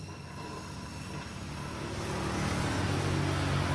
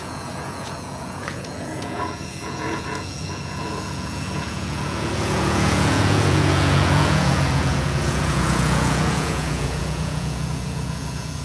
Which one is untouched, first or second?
first